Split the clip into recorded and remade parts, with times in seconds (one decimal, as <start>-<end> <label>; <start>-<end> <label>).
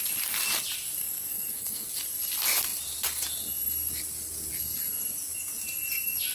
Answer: 0.0-1.0 recorded; 1.0-1.9 remade; 1.9-6.3 recorded